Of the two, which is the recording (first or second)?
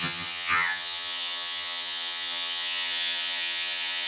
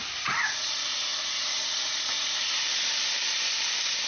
second